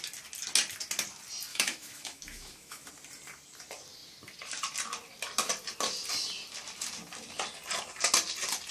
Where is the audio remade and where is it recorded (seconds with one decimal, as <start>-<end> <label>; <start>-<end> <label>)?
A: 0.0-1.5 recorded; 1.5-2.9 remade; 2.9-8.7 recorded